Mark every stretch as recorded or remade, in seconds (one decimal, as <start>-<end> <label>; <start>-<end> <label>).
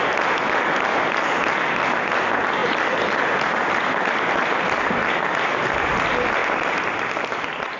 0.0-2.6 recorded; 2.6-6.0 remade; 6.0-6.4 recorded; 6.4-7.8 remade